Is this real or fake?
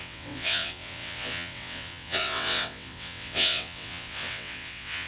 fake